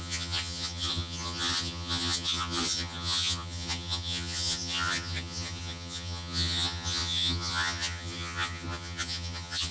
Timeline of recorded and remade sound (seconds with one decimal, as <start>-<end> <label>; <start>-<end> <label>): 0.0-9.7 remade